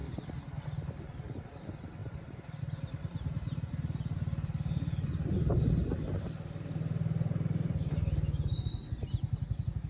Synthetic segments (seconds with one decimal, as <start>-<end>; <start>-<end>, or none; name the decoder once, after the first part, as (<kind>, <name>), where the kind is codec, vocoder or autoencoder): 2.0-2.6 (vocoder, BigVGAN v2)